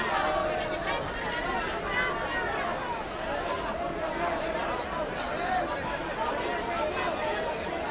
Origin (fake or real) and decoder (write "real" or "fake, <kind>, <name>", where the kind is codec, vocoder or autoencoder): real